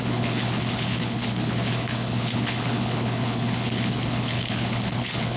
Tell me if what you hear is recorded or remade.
remade